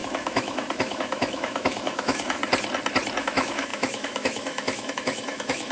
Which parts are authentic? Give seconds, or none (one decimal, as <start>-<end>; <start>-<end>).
2.4-3.2